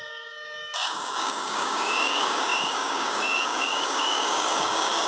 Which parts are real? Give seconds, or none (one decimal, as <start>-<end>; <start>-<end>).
none